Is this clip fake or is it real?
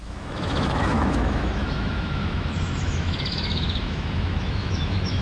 fake